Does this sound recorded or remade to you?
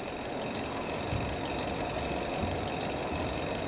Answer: recorded